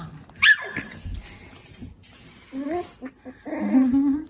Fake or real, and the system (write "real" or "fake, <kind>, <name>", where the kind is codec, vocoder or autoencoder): real